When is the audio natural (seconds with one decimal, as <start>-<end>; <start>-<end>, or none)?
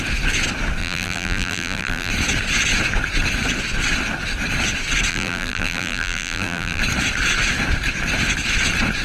0.0-0.8; 2.1-5.1; 6.8-9.0